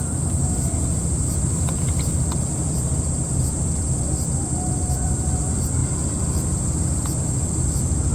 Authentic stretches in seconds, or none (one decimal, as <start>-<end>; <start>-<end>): 0.0-5.8; 7.6-8.1